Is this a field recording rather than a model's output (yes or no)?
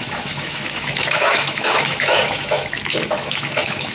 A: no